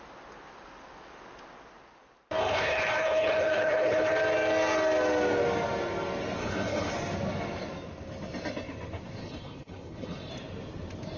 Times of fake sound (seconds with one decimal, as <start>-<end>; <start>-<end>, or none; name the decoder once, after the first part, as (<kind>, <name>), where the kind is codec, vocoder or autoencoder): 2.4-4.1 (codec, HILCodec); 6.4-6.9; 9.2-10.3